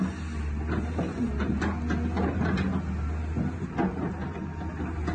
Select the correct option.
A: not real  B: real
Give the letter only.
B